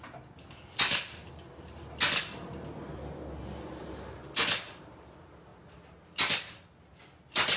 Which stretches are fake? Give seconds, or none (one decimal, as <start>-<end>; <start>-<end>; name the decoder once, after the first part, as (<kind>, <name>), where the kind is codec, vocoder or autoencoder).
none